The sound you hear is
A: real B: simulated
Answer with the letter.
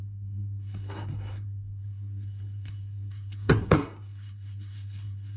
B